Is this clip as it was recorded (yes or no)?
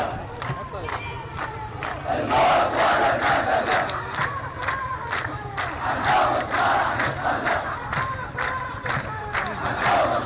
yes